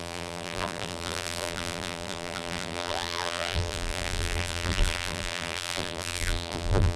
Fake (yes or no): yes